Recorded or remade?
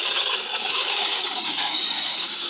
remade